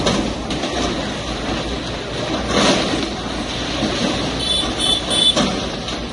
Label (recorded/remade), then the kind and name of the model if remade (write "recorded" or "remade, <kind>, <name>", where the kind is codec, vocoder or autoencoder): recorded